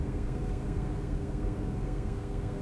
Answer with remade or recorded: remade